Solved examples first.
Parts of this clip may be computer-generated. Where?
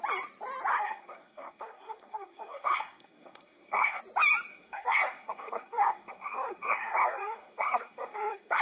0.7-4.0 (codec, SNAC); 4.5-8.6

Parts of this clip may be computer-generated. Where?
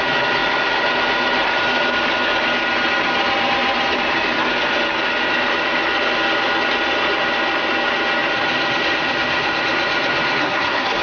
10.4-11.0 (codec, SNAC)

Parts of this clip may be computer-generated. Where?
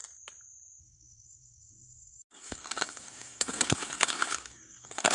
0.8-5.1 (codec, SNAC)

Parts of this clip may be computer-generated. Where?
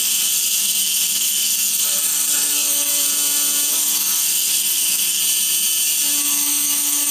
0.0-2.9 (codec, SNAC); 3.7-5.2; 6.2-7.1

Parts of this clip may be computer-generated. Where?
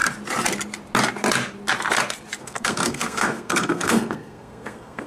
2.4-5.1 (codec, SNAC)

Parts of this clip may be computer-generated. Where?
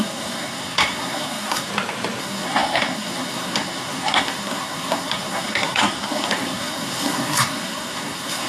0.0-1.7 (codec, SNAC); 2.2-8.5